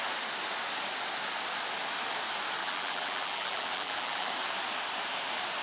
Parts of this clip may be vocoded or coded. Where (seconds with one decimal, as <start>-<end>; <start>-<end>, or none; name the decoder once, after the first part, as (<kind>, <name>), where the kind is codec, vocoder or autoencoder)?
2.6-4.3 (vocoder, BigVGAN v2)